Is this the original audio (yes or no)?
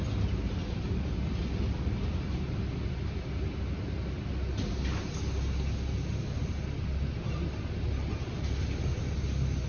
yes